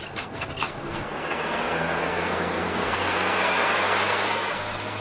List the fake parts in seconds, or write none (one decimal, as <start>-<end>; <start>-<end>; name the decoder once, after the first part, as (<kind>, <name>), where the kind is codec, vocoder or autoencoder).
0.0-5.0 (codec, SNAC)